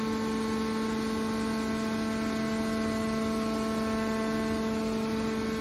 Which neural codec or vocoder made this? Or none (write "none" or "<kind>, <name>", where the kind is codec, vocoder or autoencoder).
none